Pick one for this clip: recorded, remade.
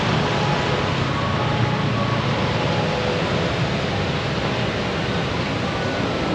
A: recorded